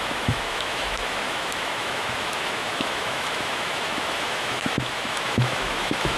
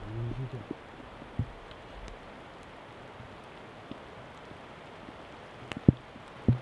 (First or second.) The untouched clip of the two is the second